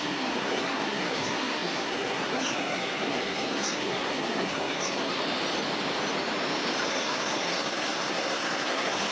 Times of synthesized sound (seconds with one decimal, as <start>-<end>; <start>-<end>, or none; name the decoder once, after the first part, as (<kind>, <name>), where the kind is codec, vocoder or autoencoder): 0.0-5.2 (codec, SNAC); 6.9-9.1

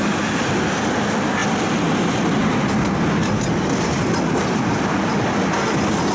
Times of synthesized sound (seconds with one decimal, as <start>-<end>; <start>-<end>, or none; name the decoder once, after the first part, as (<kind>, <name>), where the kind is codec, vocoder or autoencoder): none

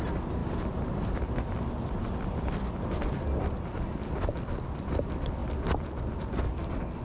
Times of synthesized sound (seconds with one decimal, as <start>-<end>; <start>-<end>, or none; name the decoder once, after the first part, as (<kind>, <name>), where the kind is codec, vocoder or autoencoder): none